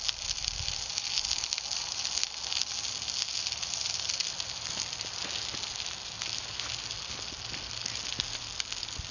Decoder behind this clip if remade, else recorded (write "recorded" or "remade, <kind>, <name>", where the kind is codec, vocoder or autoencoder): recorded